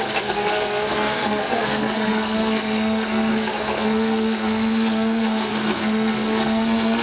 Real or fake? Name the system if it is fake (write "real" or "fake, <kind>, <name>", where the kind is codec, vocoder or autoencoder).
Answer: fake, codec, SNAC